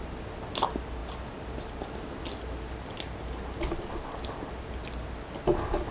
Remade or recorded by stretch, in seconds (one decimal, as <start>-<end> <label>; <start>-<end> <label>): 0.0-5.9 recorded